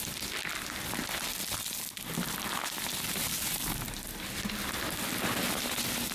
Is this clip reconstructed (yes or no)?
no